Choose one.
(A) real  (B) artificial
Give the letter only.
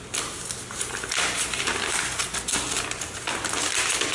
A